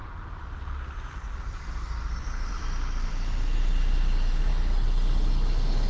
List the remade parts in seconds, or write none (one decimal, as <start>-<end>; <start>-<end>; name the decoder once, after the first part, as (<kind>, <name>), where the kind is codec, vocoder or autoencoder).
0.0-3.1 (vocoder, BigVGAN v2)